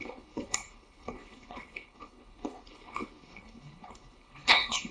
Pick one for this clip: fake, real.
fake